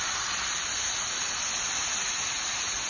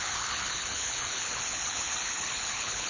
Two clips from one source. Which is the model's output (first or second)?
second